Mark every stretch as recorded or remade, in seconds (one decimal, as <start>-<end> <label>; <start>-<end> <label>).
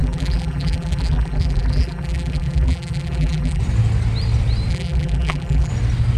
0.0-3.6 remade; 3.6-4.7 recorded; 4.7-5.7 remade; 5.7-6.2 recorded